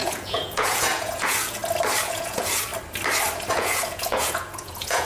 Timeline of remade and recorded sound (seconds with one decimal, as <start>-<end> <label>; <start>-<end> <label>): 0.0-1.6 remade; 1.6-2.1 recorded; 2.1-2.7 remade; 2.7-3.5 recorded; 3.5-5.0 remade